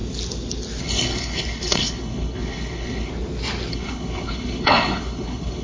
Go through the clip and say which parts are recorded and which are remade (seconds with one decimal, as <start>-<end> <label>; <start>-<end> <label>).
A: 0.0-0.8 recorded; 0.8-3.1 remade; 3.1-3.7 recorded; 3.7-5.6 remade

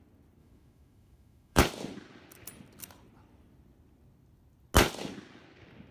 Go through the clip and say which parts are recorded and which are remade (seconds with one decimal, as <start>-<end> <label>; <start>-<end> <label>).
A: 0.0-0.4 recorded; 0.4-1.6 remade; 1.6-5.9 recorded

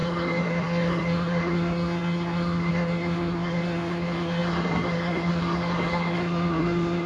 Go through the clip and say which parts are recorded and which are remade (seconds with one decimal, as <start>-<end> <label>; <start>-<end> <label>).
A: 0.0-7.1 remade